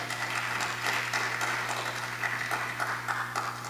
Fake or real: real